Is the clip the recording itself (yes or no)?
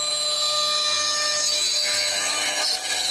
no